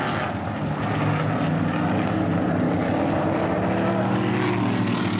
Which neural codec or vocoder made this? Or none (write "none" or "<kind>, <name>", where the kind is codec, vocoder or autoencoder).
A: none